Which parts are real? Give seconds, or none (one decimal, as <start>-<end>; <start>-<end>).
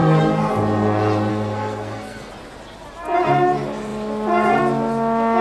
0.5-1.3; 2.3-5.4